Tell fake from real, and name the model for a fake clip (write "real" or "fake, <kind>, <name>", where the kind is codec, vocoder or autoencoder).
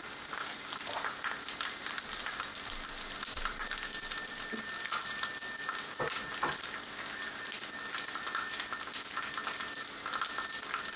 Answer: real